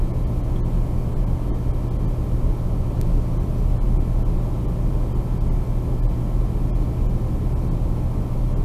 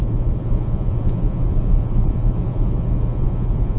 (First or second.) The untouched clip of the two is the first